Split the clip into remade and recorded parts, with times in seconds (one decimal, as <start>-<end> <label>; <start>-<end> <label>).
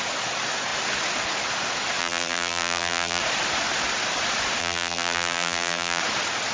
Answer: 0.0-2.0 recorded; 2.0-3.2 remade; 3.2-4.6 recorded; 4.6-6.0 remade; 6.0-6.5 recorded